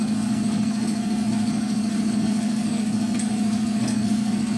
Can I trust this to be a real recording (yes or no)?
no